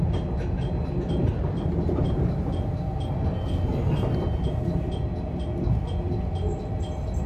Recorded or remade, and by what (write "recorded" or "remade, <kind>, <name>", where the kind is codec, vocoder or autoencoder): recorded